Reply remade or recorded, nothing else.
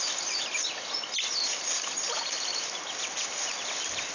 recorded